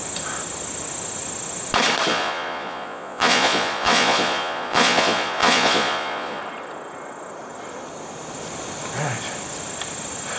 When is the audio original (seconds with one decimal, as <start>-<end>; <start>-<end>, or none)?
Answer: 0.0-2.1; 6.4-10.4